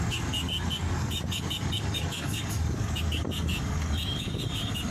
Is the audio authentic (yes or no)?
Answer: no